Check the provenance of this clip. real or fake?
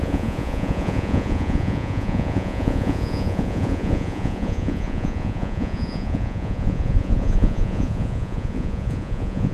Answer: fake